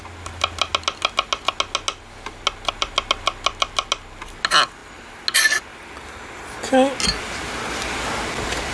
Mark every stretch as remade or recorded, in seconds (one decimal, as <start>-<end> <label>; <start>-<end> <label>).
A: 0.0-8.7 recorded